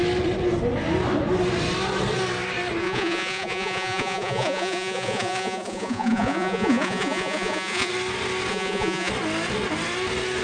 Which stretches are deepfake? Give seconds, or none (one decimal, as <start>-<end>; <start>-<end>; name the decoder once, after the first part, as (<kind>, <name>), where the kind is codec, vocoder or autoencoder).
2.8-7.9 (vocoder, Vocos); 8.5-9.1